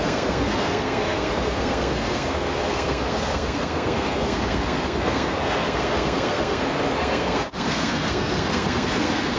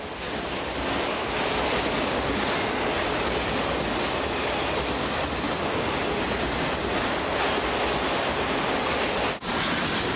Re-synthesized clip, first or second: first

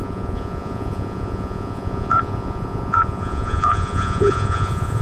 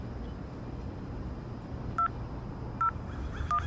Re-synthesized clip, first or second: first